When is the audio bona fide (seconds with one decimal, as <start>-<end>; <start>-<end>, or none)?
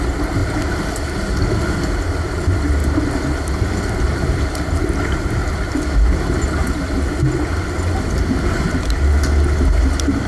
0.0-10.3